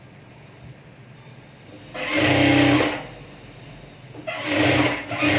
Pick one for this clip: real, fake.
real